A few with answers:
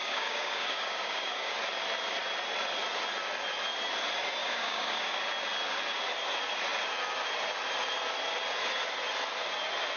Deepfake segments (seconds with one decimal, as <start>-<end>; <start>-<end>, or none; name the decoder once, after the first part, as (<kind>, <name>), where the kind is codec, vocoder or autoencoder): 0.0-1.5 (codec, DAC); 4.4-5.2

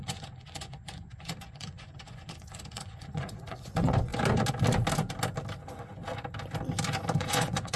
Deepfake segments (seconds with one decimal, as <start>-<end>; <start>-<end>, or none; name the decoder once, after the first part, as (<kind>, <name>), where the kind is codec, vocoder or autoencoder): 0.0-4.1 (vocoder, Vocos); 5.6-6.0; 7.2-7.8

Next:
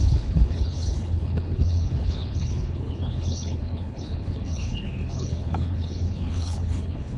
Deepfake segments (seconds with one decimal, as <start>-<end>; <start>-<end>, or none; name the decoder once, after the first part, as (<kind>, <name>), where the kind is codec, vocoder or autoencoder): 0.0-7.2 (codec, HILCodec)

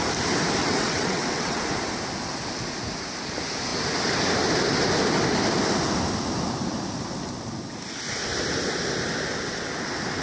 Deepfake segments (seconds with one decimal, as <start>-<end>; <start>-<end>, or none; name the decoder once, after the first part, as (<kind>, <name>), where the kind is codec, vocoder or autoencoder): 0.6-1.6 (vocoder, WaveNeXt)

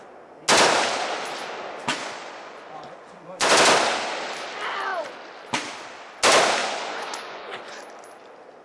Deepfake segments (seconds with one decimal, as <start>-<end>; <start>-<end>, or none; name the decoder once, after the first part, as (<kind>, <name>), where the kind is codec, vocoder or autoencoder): 1.9-3.5 (vocoder, Vocos); 6.6-7.8

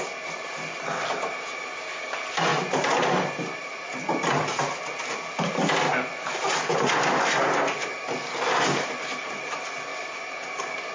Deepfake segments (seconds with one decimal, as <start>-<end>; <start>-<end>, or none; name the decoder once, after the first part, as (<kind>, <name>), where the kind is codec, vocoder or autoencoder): 9.9-10.9 (vocoder, BigVGAN v2)

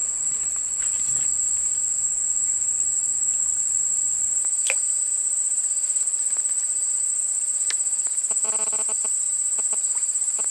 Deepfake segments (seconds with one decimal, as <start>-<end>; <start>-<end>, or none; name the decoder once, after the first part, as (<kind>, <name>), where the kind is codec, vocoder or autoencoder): none